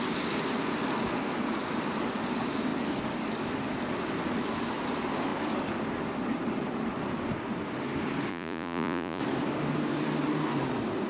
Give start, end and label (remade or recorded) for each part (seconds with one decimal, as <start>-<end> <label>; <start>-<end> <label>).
0.0-8.3 recorded; 8.3-9.2 remade; 9.2-11.1 recorded